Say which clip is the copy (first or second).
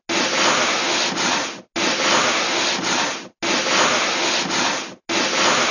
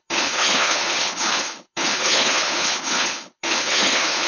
second